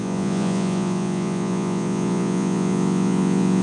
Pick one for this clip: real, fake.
fake